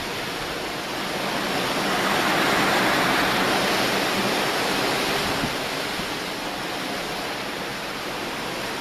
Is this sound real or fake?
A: real